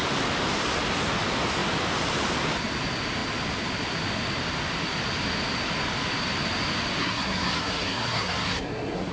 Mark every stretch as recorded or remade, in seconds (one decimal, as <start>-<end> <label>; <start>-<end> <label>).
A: 0.0-7.0 recorded; 7.0-9.1 remade